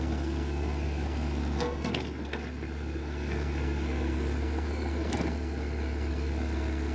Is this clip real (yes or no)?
no